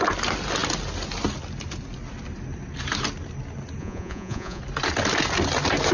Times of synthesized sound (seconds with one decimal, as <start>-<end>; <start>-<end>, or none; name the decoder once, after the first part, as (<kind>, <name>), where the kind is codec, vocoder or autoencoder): 3.8-4.6 (vocoder, Vocos)